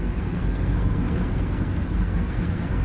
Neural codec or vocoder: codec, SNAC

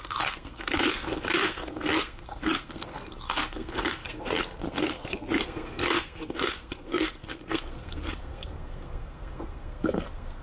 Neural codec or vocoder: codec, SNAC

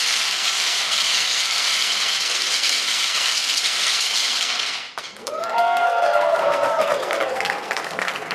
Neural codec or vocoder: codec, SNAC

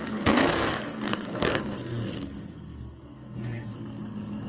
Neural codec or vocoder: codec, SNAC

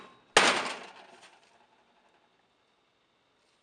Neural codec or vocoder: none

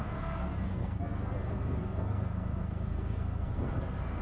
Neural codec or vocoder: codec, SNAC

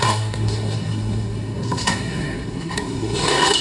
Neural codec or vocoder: codec, SNAC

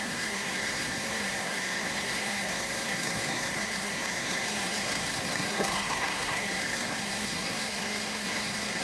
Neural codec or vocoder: codec, SNAC